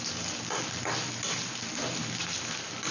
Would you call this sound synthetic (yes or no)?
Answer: no